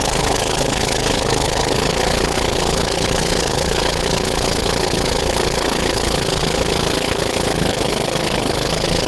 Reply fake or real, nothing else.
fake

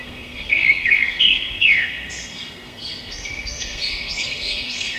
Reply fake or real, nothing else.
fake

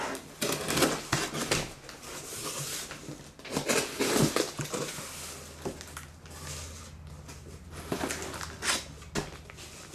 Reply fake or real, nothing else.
real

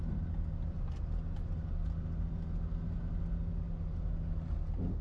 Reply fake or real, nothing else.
real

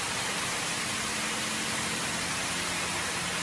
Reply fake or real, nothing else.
real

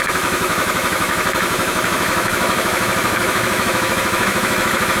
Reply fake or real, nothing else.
fake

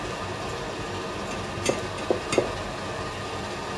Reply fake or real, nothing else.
real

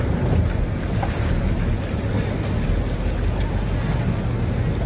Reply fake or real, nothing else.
real